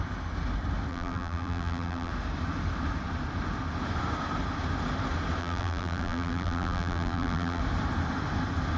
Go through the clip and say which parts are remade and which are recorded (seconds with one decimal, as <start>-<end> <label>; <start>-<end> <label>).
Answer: 0.0-0.9 recorded; 0.9-2.1 remade; 2.1-5.4 recorded; 5.4-7.6 remade; 7.6-8.8 recorded